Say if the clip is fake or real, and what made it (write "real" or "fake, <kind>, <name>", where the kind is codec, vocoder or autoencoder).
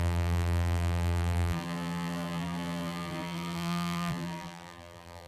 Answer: fake, vocoder, BigVGAN v2